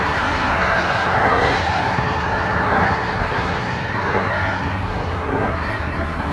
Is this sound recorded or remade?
remade